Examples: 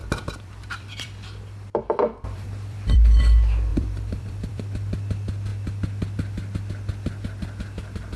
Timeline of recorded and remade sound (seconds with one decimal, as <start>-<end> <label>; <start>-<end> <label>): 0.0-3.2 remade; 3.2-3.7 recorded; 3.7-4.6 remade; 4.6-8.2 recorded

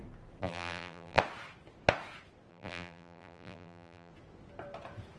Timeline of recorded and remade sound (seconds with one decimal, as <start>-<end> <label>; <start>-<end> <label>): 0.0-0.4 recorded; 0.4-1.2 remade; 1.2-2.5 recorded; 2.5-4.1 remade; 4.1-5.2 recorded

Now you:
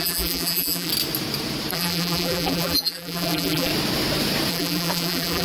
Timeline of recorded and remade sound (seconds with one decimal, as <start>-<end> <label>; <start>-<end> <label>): 0.0-0.9 remade; 0.9-1.7 recorded; 1.7-3.7 remade; 3.7-4.5 recorded; 4.5-5.4 remade